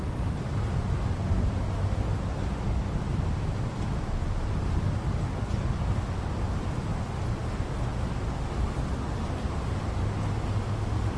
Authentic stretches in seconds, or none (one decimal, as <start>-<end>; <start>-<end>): 0.0-11.2